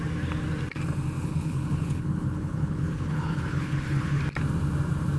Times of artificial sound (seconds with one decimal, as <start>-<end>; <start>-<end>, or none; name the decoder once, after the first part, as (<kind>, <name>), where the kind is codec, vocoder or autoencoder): 1.2-4.2 (codec, HILCodec)